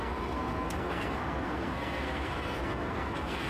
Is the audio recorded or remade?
remade